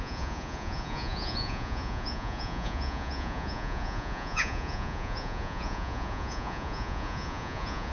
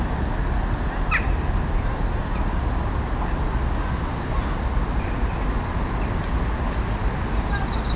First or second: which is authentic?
second